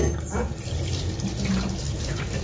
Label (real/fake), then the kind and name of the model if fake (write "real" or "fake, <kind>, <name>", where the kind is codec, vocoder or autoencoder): real